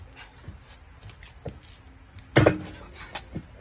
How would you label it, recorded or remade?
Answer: recorded